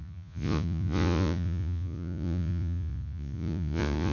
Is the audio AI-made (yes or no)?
yes